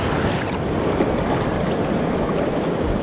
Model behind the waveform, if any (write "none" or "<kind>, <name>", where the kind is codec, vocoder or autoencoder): none